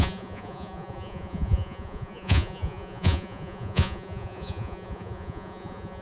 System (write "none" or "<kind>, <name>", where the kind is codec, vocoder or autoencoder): vocoder, Vocos